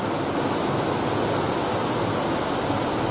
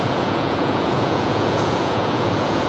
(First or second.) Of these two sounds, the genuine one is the first